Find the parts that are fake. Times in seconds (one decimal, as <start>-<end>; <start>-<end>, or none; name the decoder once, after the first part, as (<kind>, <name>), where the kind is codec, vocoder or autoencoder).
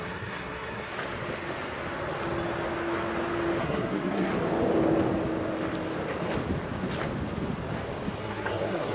0.0-0.9 (codec, SNAC); 3.6-4.3; 8.2-8.9